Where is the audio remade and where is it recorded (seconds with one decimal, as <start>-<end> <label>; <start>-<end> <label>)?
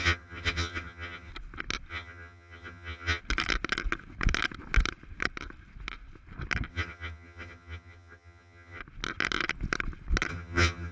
0.0-1.3 remade; 1.3-1.9 recorded; 1.9-3.2 remade; 3.2-6.7 recorded; 6.7-8.8 remade; 8.8-10.3 recorded; 10.3-10.9 remade